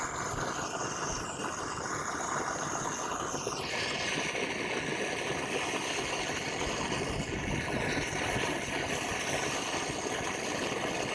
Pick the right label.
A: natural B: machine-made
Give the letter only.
A